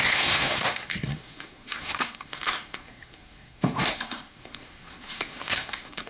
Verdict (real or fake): fake